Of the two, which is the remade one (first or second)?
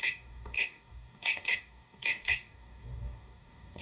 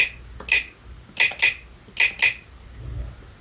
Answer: first